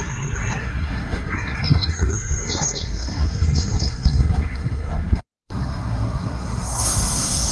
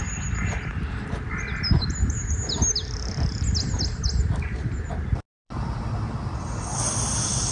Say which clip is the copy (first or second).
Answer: first